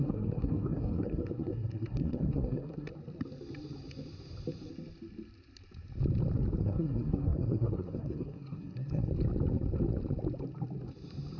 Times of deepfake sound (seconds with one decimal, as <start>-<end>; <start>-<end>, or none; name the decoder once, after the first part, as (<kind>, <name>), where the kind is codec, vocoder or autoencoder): 0.0-2.9 (codec, SNAC); 6.6-9.1